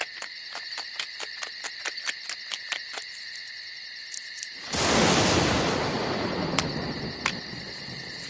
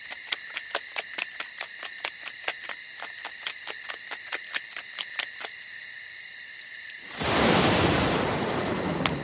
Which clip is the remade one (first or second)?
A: second